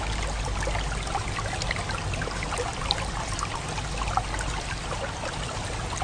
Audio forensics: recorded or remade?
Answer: recorded